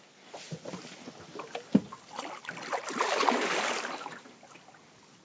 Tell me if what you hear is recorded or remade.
recorded